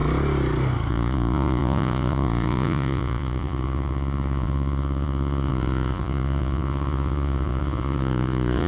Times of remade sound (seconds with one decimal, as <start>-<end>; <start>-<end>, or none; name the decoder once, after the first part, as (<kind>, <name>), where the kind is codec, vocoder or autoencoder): 0.9-8.7 (vocoder, Vocos)